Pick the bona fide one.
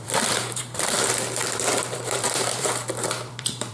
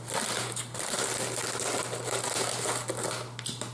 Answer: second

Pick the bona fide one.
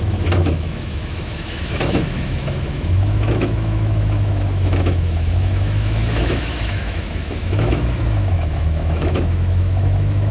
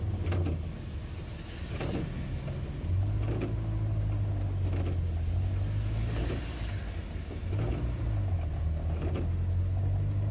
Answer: second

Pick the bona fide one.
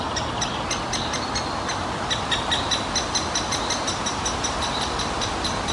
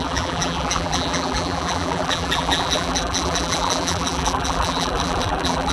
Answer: first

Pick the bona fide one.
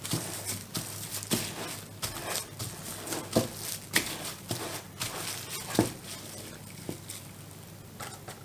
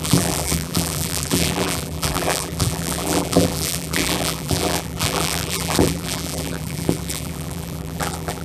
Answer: first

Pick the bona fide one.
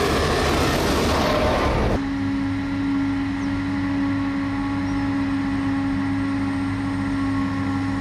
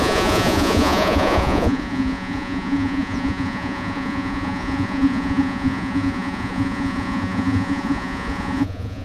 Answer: first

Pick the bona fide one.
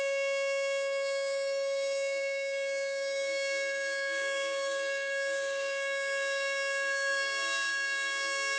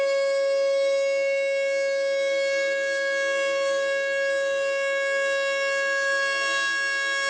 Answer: second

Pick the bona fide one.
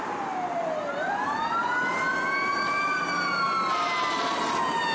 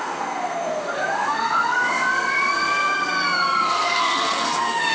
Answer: first